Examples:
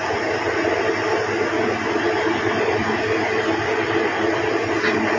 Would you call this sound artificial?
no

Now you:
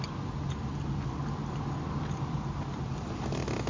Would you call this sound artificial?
no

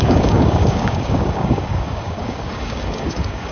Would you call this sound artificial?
yes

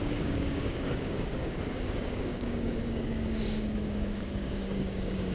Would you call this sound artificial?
yes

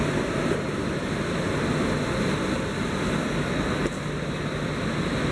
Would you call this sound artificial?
no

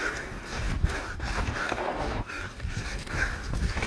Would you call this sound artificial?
yes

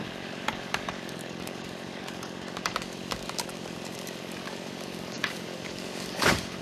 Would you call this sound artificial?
yes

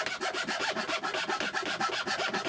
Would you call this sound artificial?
no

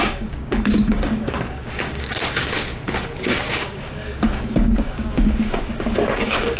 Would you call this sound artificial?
yes